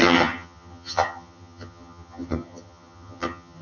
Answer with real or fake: fake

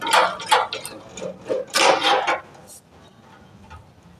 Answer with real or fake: real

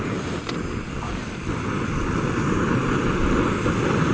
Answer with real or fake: real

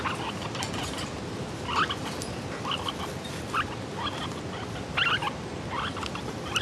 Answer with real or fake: real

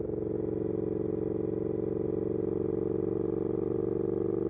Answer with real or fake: real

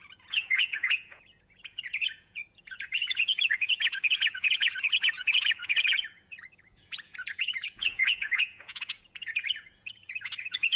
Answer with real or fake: fake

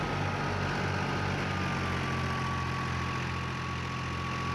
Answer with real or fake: real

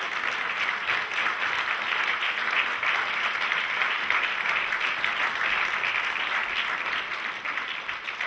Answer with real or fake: real